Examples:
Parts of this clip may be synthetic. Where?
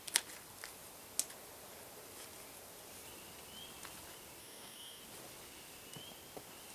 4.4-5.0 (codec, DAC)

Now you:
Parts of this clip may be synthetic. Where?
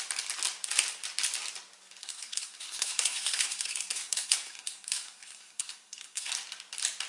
2.0-6.3 (codec, SNAC)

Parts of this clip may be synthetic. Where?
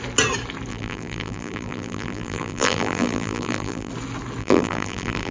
0.7-3.9 (vocoder, BigVGAN v2); 4.4-5.3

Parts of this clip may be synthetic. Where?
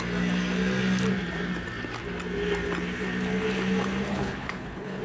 4.1-5.0 (codec, HILCodec)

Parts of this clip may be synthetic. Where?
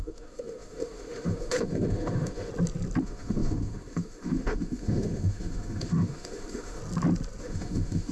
0.0-2.5 (autoencoder, DAC-VAE); 3.0-6.8; 7.4-8.1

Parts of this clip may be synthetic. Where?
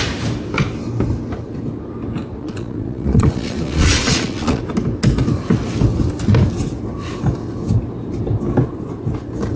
2.4-4.6 (vocoder, Vocos)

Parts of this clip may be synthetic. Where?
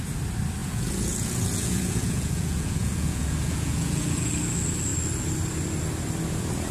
0.6-4.3 (vocoder, Vocos)